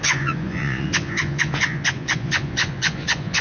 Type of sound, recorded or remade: remade